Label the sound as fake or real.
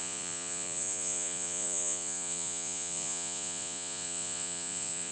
fake